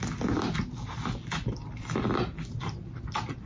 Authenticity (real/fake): real